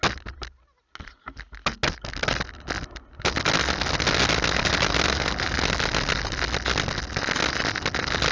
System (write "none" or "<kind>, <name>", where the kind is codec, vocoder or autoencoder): none